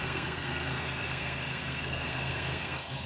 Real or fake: fake